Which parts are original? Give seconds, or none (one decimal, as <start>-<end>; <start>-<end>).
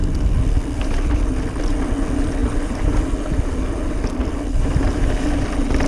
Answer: 0.9-2.4; 4.9-5.9